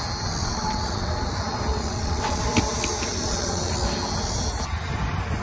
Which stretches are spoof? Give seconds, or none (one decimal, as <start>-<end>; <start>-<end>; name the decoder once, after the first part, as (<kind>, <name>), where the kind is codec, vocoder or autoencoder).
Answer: 0.4-1.1 (vocoder, WaveNeXt); 1.7-2.4; 3.1-3.7